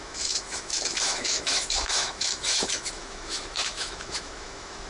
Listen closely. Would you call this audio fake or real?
fake